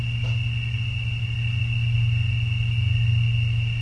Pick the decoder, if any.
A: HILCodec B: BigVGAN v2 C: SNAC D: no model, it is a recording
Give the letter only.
D